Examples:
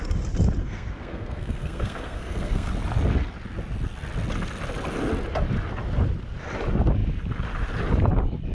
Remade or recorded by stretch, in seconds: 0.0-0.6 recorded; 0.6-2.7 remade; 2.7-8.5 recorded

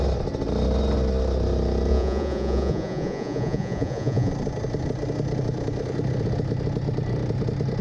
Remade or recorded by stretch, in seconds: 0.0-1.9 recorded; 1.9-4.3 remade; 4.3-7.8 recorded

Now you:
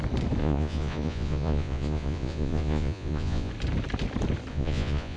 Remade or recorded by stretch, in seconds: 0.0-0.4 recorded; 0.4-3.5 remade; 3.5-4.5 recorded; 4.5-5.2 remade